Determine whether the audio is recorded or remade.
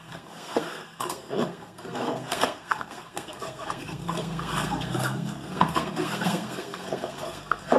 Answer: remade